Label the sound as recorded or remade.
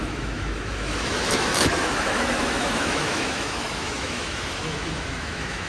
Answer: remade